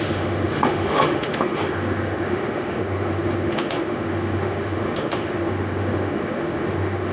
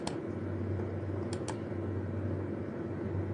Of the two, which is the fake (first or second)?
first